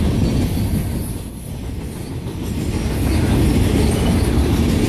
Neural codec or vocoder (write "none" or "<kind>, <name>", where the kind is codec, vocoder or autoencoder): none